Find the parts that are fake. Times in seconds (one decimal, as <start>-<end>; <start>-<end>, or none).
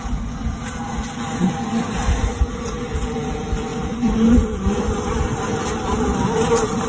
2.0-2.9; 3.7-6.0